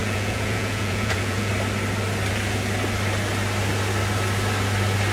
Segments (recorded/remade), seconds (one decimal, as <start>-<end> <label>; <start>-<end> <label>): 0.0-1.5 remade; 1.5-5.1 recorded